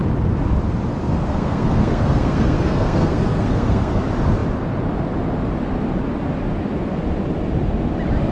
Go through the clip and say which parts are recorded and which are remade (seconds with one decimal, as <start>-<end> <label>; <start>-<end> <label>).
0.0-0.9 recorded; 0.9-4.0 remade; 4.0-8.3 recorded